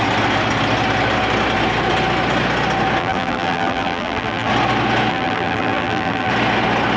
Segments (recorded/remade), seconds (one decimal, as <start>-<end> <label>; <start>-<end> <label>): 0.0-3.0 recorded; 3.0-4.5 remade; 4.5-5.1 recorded; 5.1-6.3 remade; 6.3-7.0 recorded